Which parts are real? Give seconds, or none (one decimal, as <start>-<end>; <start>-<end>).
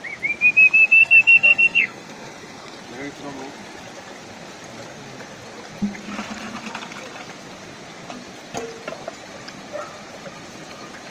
0.0-1.0; 2.8-11.1